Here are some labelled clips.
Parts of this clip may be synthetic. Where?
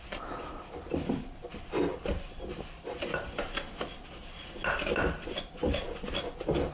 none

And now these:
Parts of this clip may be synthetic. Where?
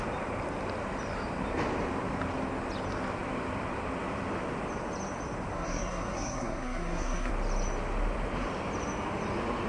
5.5-7.3 (codec, SNAC)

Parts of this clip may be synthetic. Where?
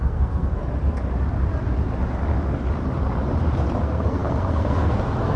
0.0-0.6 (codec, SNAC); 3.8-5.4